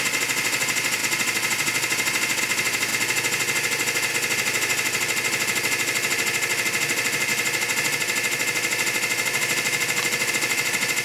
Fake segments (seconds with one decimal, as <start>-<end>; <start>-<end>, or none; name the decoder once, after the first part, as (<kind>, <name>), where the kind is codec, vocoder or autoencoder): none